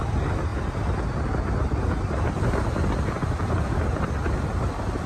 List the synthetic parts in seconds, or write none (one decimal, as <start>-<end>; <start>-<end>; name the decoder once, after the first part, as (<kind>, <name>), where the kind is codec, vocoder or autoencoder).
none

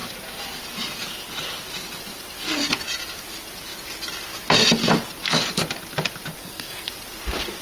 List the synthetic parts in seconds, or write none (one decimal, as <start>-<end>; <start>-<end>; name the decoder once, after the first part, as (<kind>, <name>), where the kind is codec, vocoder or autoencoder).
6.4-6.9 (codec, SNAC)

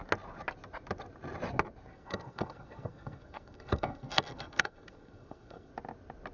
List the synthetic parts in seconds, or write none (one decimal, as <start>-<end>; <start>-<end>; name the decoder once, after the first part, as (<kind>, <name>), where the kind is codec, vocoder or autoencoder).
1.9-5.7 (codec, SNAC)

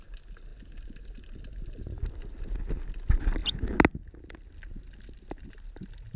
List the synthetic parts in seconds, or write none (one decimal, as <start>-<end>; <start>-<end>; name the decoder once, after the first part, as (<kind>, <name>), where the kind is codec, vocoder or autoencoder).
none

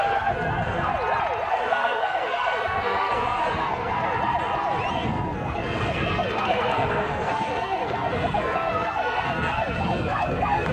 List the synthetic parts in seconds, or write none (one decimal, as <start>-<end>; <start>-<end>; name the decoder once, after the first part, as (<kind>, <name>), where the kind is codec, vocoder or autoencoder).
0.0-0.9 (codec, SNAC); 1.5-4.1; 4.9-10.7